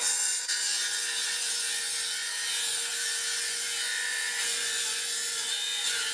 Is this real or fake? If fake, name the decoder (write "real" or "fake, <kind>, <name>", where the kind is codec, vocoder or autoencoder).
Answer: fake, vocoder, Vocos